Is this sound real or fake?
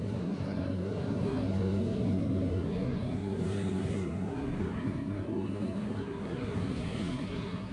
fake